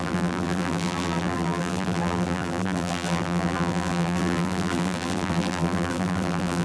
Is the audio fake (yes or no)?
yes